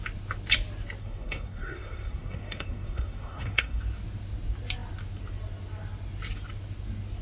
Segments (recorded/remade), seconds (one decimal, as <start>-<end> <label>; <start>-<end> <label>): 0.0-1.0 recorded; 1.0-3.8 remade; 3.8-7.2 recorded